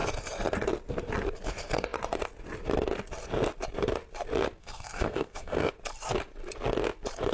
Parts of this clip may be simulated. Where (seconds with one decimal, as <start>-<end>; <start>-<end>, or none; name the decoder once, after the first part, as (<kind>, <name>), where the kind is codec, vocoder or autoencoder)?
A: 4.6-5.7 (codec, SNAC)